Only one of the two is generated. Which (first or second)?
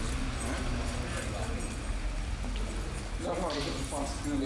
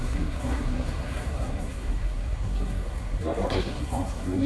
second